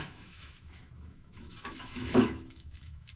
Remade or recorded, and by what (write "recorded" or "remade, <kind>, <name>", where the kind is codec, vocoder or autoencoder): remade, autoencoder, DAC-VAE